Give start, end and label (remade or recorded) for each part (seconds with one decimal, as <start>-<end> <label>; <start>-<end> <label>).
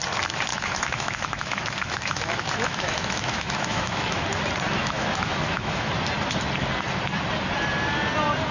0.0-0.5 recorded; 0.5-4.2 remade; 4.2-4.8 recorded; 4.8-5.9 remade; 5.9-8.5 recorded